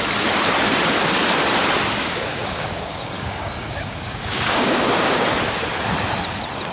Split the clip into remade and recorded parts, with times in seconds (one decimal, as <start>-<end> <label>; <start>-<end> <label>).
0.0-2.0 recorded; 2.0-5.2 remade; 5.2-6.7 recorded